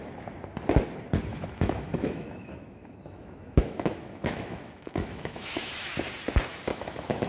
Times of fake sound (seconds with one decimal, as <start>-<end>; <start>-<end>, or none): 1.3-5.7; 6.7-7.3